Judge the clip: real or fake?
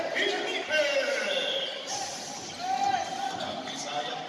real